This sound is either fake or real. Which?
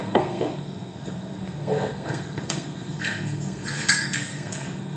fake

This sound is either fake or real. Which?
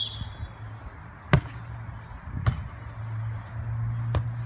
real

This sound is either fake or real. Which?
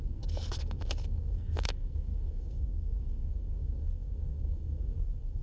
fake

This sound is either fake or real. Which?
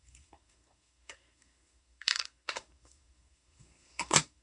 fake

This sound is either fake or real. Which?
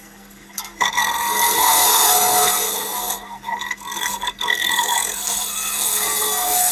fake